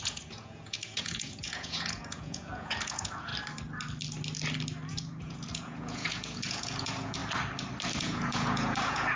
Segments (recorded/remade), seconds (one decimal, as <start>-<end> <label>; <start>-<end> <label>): 0.0-3.3 remade; 3.3-4.9 recorded; 4.9-7.2 remade; 7.2-8.0 recorded; 8.0-9.2 remade